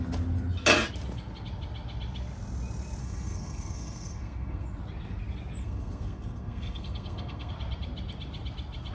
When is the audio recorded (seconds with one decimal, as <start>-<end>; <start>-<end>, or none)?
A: 0.0-3.0; 4.8-5.6; 7.5-8.9